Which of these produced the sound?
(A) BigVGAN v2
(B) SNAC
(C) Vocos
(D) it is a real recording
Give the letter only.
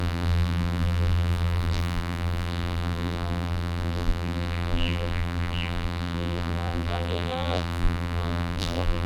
A